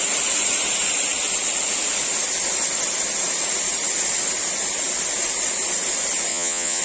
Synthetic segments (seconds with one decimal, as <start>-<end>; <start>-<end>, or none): 6.3-6.8